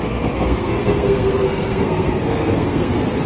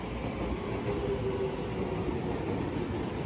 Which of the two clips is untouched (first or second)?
second